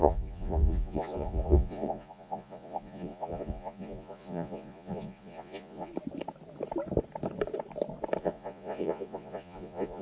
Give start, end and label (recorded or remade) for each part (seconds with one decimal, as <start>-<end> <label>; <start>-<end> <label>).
0.0-5.9 remade; 5.9-8.2 recorded; 8.2-10.0 remade